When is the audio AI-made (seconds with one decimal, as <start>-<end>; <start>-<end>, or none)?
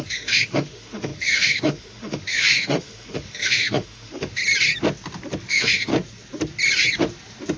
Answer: 0.0-4.4; 5.5-5.9